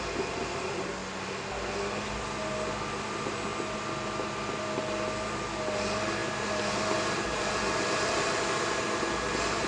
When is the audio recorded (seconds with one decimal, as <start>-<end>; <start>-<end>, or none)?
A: 0.0-9.7